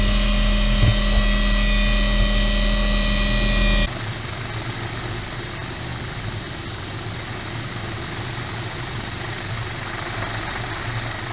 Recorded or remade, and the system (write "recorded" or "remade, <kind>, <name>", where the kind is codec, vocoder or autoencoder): recorded